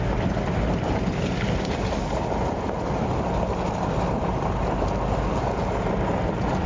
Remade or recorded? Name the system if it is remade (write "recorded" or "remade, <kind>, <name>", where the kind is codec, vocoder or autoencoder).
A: recorded